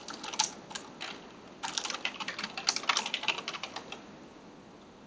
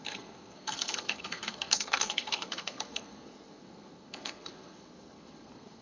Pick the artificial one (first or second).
second